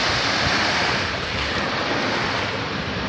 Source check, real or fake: real